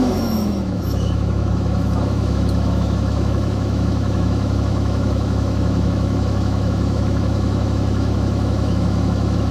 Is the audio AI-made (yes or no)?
yes